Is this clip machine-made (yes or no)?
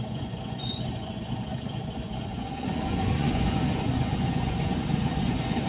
yes